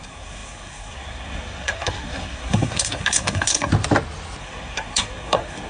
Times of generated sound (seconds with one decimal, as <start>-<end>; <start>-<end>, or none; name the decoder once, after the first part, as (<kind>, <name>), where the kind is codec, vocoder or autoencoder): 0.0-3.7 (codec, SNAC); 4.4-5.7